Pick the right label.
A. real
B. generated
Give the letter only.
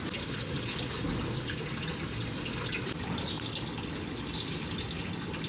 A